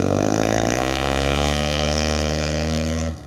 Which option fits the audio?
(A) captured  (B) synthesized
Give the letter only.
B